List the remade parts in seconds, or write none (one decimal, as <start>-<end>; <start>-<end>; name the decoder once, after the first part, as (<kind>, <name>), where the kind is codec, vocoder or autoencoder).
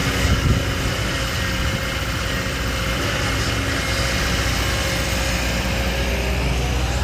0.0-0.6 (codec, DAC)